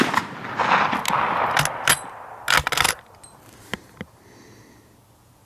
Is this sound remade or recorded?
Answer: recorded